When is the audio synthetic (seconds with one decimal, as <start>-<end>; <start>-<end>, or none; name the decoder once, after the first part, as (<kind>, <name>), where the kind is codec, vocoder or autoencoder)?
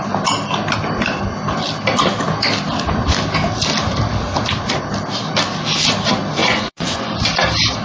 6.4-7.2 (vocoder, Vocos)